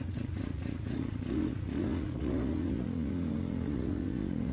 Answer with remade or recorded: remade